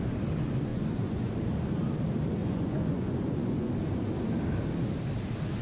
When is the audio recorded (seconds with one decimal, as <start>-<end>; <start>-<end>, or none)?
0.0-0.7; 1.3-2.4; 3.7-5.6